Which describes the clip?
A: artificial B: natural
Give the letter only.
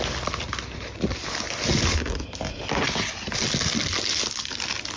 B